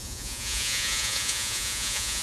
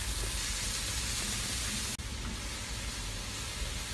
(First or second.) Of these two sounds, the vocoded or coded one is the first